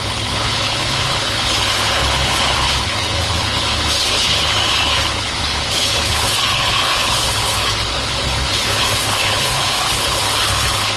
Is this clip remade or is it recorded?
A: remade